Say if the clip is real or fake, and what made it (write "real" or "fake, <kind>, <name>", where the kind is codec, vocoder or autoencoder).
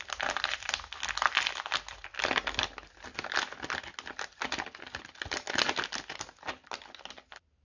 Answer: real